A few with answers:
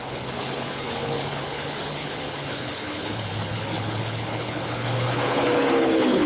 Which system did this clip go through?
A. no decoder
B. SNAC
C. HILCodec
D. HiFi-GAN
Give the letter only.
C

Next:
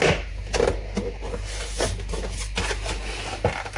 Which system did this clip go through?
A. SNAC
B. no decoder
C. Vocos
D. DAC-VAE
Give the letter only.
B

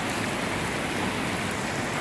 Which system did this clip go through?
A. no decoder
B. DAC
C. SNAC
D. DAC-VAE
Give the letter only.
A